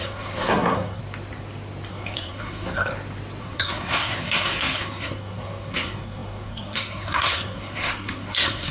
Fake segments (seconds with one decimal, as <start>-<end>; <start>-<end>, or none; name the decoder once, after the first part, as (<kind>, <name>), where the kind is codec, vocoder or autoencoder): 0.0-1.0 (codec, SNAC); 1.9-2.9; 3.4-8.7